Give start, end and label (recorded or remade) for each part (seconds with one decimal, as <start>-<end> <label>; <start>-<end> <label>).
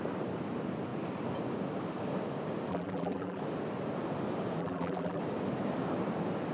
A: 0.0-2.7 recorded; 2.7-3.4 remade; 3.4-4.6 recorded; 4.6-5.2 remade; 5.2-6.5 recorded